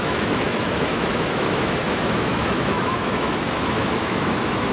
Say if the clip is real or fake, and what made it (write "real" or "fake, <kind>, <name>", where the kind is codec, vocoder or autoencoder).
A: fake, autoencoder, DAC-VAE